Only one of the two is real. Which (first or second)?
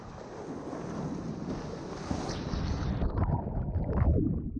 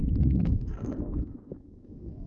first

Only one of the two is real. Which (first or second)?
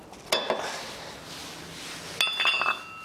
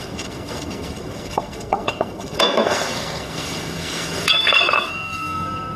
first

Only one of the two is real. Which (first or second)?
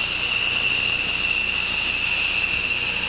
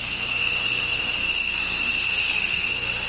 first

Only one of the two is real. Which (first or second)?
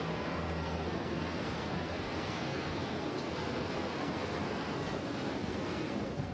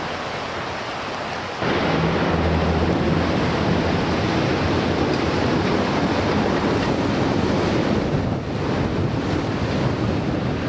second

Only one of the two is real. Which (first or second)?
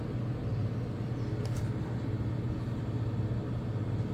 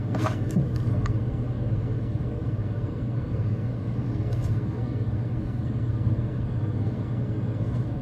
first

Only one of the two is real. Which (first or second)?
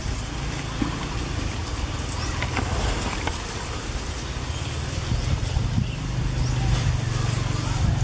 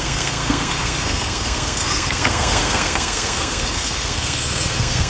first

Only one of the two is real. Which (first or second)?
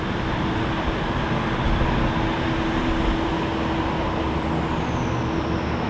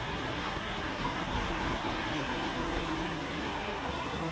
first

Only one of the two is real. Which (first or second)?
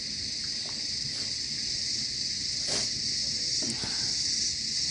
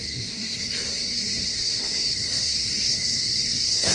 first